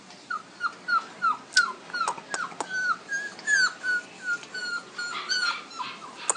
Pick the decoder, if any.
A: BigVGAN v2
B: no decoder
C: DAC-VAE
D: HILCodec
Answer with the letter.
B